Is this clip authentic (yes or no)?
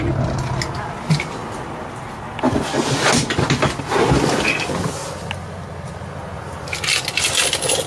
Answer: yes